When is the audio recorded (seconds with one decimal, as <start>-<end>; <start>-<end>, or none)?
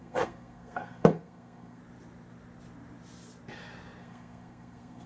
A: 1.8-4.0